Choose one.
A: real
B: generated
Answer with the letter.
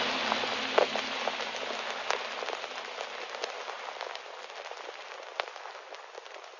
A